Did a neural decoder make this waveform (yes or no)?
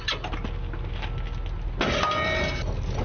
no